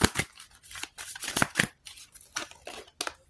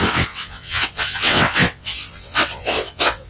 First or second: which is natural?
first